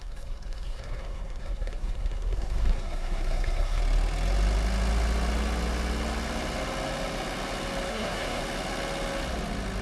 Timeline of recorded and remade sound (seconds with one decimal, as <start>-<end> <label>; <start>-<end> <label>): 0.0-3.8 remade; 3.8-7.9 recorded; 7.9-8.4 remade; 8.4-9.8 recorded